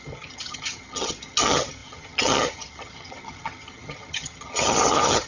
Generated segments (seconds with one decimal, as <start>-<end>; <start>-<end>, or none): 0.0-5.3